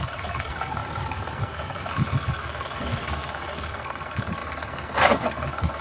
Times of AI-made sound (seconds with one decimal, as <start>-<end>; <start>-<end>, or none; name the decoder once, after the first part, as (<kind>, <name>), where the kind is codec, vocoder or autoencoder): 0.0-5.8 (codec, SNAC)